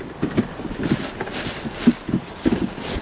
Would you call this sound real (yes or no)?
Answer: yes